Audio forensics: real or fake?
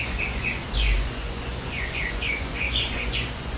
fake